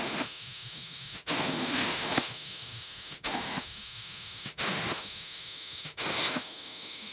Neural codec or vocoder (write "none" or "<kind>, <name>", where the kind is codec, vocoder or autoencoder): autoencoder, DAC-VAE